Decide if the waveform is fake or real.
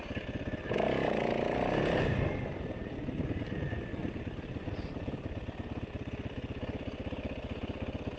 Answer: real